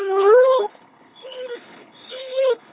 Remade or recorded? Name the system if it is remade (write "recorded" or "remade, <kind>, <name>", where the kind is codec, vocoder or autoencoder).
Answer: remade, codec, HILCodec